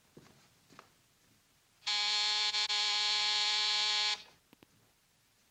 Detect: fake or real real